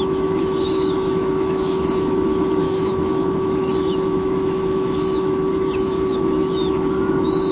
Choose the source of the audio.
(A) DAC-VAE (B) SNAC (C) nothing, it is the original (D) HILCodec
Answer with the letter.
A